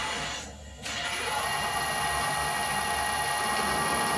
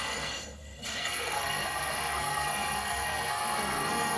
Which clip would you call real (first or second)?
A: first